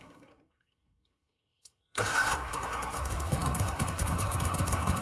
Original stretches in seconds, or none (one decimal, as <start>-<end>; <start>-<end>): none